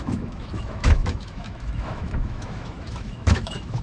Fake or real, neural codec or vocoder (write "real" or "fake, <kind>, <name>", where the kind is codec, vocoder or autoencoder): fake, autoencoder, DAC-VAE